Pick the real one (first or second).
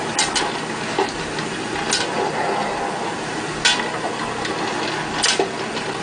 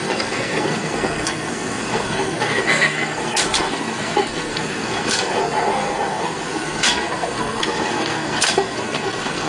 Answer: first